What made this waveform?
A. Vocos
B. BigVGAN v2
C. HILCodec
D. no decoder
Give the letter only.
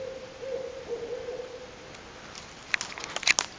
D